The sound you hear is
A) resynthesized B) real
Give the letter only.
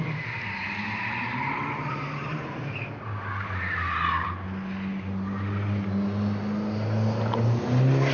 B